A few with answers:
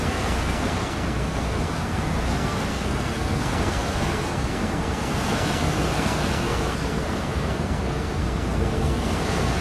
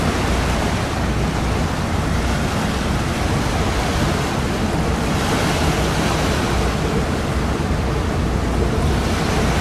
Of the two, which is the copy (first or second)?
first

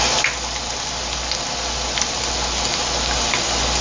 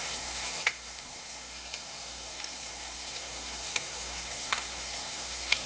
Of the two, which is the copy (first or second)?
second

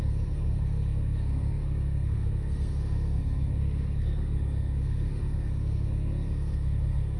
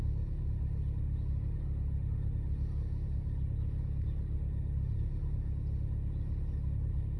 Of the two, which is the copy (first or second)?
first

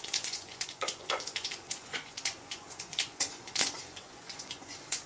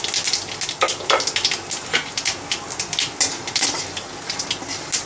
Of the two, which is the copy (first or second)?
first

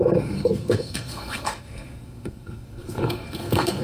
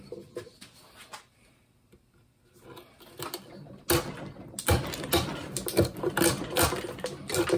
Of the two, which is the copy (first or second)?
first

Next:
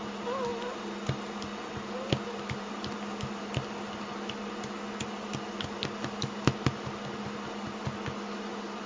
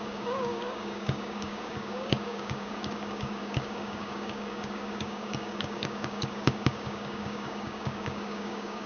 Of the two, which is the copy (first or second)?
second